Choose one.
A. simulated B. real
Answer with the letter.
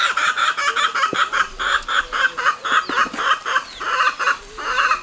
B